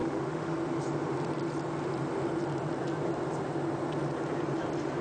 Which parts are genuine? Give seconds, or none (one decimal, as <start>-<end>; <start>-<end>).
0.5-5.0